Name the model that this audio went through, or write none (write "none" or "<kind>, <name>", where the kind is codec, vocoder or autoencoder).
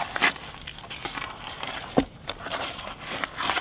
none